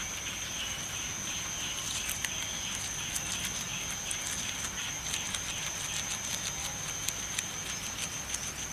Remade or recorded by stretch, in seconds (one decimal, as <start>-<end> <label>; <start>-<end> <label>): 0.0-8.7 recorded